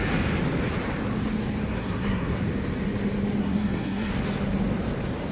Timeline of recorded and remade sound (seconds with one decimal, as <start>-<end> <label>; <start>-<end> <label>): 0.0-1.7 recorded; 1.7-2.4 remade; 2.4-3.4 recorded; 3.4-4.1 remade; 4.1-5.3 recorded